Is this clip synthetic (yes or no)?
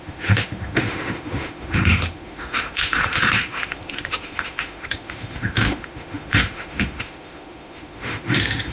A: yes